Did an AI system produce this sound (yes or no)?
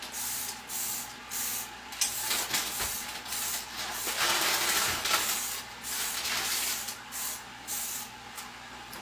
yes